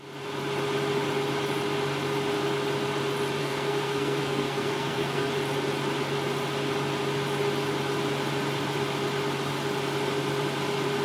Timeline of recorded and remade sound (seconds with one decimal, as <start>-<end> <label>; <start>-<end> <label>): 0.0-3.4 recorded; 3.4-5.3 remade; 5.3-11.0 recorded